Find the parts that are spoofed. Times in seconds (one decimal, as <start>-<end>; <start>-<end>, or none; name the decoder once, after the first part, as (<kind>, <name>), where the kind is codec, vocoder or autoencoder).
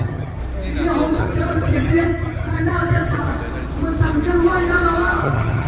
0.0-0.4 (vocoder, HiFi-GAN); 1.2-3.3; 5.2-5.7